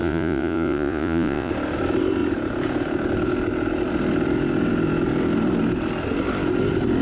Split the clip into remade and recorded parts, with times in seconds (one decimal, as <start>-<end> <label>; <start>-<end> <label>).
0.0-1.5 remade; 1.5-7.0 recorded